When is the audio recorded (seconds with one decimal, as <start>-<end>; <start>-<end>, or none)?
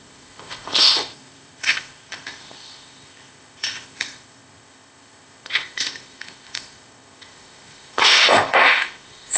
none